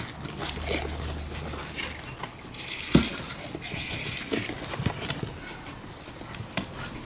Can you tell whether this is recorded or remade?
recorded